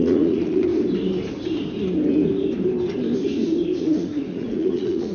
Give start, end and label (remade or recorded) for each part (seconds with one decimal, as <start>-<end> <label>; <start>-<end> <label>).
0.0-0.7 remade; 0.7-3.8 recorded; 3.8-5.1 remade